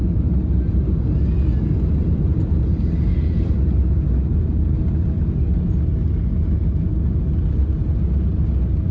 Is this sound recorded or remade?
recorded